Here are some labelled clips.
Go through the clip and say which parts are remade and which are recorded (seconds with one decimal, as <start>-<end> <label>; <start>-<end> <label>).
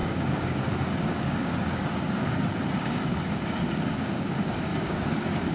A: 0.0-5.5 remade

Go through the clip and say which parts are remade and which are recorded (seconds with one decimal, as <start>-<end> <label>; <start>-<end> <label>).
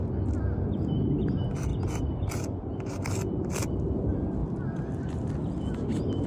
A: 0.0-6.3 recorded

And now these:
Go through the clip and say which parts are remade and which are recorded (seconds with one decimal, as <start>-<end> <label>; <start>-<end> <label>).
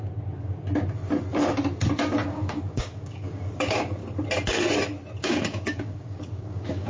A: 0.0-2.0 recorded; 2.0-4.0 remade; 4.0-5.2 recorded; 5.2-6.9 remade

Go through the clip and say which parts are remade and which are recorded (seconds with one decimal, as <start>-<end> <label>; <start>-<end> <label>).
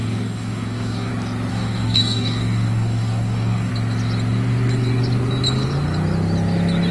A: 0.0-1.1 remade; 1.1-1.5 recorded; 1.5-3.7 remade; 3.7-6.9 recorded